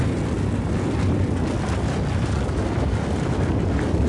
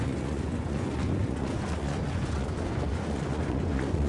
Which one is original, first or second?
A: first